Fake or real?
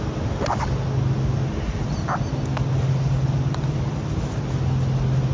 real